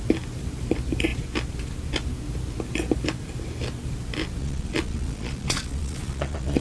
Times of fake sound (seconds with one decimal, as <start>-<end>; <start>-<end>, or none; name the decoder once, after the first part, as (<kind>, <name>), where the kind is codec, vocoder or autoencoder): 4.4-6.6 (vocoder, Vocos)